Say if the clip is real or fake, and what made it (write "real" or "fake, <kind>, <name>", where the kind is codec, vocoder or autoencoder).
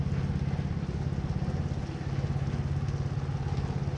real